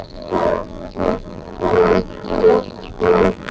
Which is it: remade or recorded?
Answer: remade